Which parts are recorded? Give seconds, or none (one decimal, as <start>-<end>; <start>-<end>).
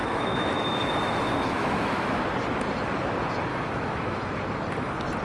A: 2.2-3.5; 4.2-5.2